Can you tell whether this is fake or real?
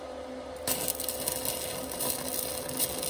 real